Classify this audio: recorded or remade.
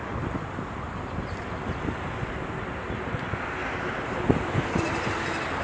recorded